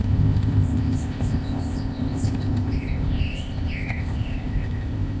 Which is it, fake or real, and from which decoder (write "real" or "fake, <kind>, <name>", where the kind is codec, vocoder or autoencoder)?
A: fake, codec, ZipCodec